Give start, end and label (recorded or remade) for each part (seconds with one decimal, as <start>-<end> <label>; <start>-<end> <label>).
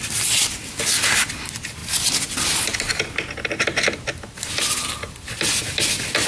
0.0-6.3 recorded